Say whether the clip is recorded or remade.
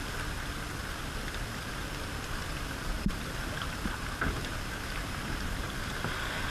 recorded